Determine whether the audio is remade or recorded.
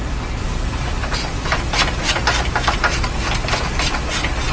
recorded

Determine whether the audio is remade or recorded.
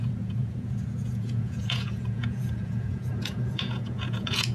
remade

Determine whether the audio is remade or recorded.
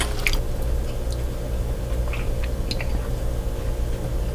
recorded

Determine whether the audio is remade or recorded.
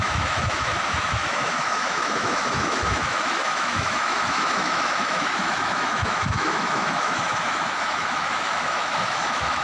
remade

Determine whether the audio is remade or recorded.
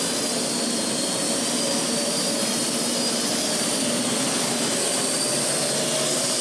recorded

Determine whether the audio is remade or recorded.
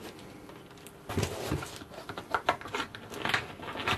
recorded